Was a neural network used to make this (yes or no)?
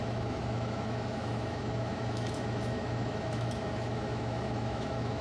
yes